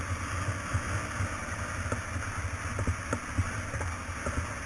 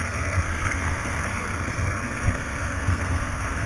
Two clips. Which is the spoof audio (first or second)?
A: second